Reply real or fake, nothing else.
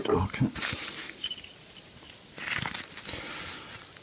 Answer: real